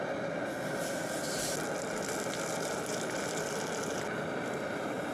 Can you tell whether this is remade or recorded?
recorded